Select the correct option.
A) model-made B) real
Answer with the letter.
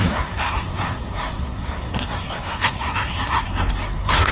A